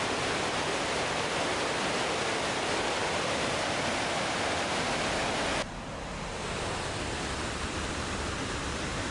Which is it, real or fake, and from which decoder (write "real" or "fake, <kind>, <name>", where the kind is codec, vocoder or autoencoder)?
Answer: real